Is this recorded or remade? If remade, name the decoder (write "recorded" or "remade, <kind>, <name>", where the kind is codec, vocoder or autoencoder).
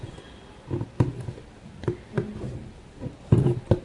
recorded